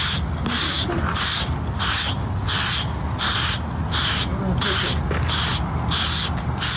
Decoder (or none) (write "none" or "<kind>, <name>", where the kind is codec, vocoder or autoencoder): none